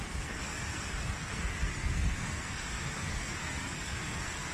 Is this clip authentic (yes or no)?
no